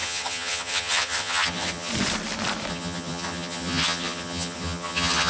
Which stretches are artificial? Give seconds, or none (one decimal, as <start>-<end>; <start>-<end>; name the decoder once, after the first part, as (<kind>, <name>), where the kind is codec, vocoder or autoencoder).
0.0-1.9 (vocoder, HiFi-GAN); 2.7-5.3